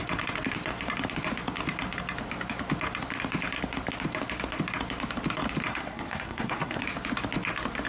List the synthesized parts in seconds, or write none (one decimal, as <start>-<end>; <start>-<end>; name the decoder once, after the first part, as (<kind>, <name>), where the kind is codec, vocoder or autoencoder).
5.7-6.8 (codec, SNAC)